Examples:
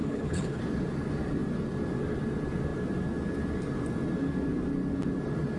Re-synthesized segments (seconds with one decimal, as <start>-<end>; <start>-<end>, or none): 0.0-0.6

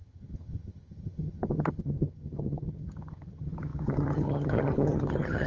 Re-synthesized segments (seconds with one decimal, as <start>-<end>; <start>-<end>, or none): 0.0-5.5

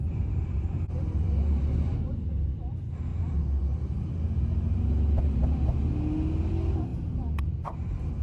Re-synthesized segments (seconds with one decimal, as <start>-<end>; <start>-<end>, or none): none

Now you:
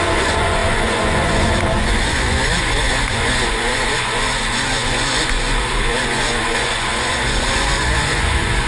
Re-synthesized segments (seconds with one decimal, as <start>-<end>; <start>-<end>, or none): 0.0-8.7

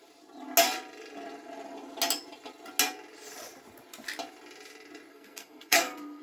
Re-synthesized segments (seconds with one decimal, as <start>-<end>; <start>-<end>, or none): 5.1-6.2

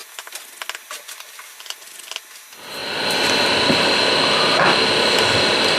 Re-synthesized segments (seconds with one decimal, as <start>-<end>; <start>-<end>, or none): none

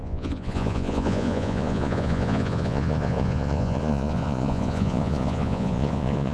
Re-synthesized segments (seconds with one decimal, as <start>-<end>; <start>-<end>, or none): 0.0-6.3